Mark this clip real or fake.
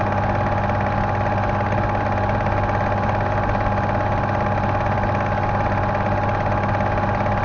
real